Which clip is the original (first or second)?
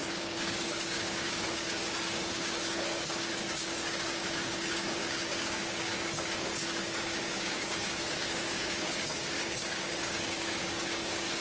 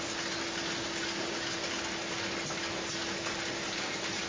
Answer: second